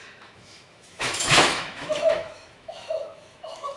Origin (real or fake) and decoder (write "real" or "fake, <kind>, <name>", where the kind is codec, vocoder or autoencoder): fake, autoencoder, DAC-VAE